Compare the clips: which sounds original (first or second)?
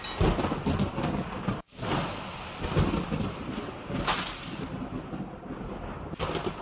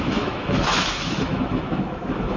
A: first